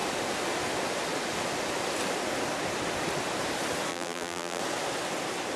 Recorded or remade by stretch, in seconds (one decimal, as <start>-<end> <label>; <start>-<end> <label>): 0.0-3.9 recorded; 3.9-4.6 remade; 4.6-5.6 recorded